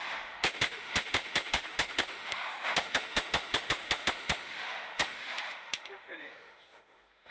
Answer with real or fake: fake